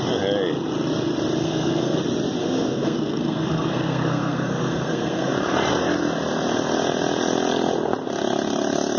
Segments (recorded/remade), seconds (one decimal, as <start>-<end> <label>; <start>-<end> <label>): 0.0-1.4 recorded; 1.4-2.0 remade; 2.0-2.4 recorded; 2.4-5.3 remade; 5.3-9.0 recorded